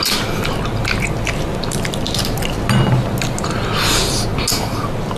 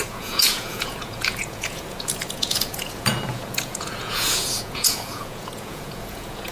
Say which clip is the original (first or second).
first